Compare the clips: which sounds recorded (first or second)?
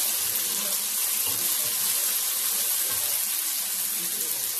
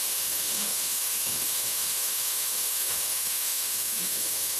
first